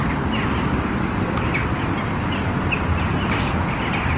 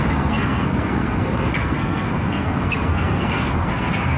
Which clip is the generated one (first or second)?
second